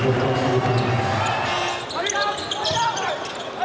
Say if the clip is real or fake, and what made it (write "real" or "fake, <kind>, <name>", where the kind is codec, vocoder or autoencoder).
real